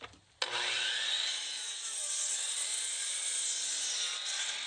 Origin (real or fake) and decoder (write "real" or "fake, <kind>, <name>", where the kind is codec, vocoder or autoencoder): real